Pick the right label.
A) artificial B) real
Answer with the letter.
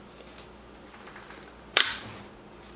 B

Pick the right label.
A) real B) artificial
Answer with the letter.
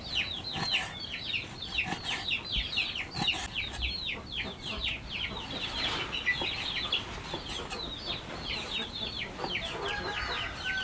A